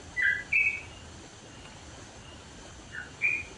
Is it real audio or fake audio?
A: real